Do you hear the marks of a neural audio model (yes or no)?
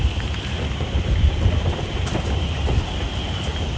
no